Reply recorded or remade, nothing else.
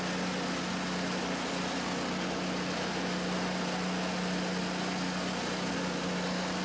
recorded